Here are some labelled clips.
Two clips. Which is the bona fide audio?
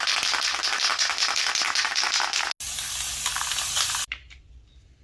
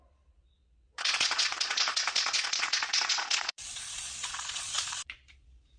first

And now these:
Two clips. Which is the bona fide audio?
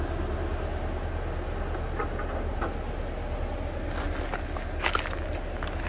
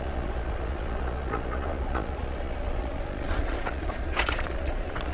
first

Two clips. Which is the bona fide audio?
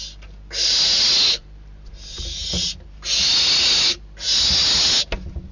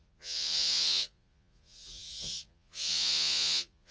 first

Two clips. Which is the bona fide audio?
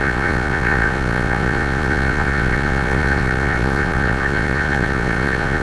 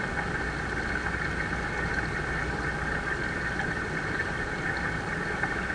second